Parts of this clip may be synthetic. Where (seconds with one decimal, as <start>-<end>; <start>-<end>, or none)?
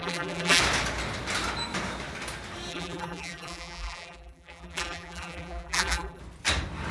0.0-0.6; 2.7-6.2